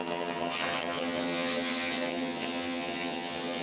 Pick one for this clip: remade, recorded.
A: remade